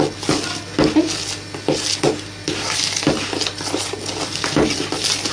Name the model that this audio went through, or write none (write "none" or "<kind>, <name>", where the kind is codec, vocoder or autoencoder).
none